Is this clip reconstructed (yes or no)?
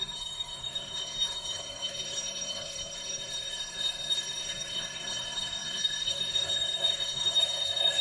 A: yes